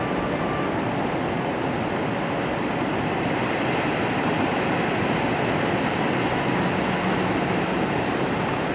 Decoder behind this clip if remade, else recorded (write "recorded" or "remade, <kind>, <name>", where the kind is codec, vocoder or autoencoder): recorded